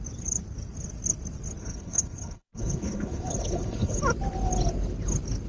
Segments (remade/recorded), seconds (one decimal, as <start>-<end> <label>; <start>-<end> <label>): 0.0-1.6 recorded; 1.6-4.0 remade; 4.0-5.5 recorded